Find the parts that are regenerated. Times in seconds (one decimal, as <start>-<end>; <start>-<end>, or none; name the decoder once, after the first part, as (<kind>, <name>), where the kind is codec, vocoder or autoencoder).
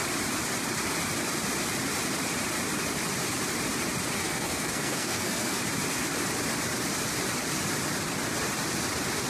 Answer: 4.2-5.6 (codec, SNAC)